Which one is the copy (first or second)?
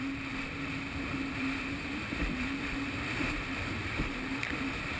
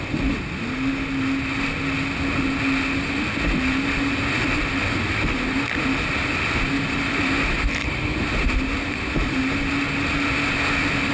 first